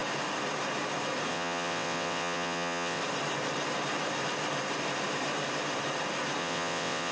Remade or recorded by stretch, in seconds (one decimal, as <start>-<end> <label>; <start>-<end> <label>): 0.0-1.3 recorded; 1.3-3.0 remade; 3.0-6.4 recorded; 6.4-7.1 remade